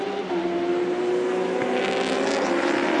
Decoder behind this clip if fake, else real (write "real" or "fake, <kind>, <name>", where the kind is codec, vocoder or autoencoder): real